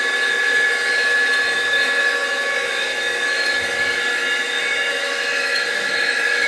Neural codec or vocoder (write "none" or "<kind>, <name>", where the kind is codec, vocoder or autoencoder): autoencoder, DAC-VAE